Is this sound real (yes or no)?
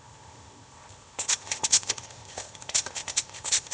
no